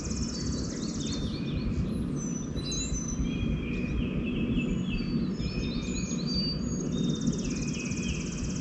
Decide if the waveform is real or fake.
real